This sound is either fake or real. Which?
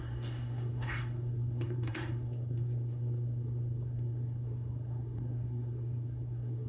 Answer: fake